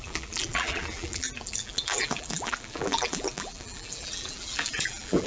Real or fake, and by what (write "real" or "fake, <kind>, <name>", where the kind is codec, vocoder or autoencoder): fake, vocoder, BigVGAN v2